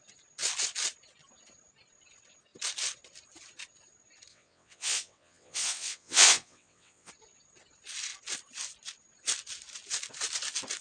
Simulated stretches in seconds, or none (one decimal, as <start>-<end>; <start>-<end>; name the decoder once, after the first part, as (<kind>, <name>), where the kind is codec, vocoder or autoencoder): 4.3-7.1 (vocoder, WaveNeXt)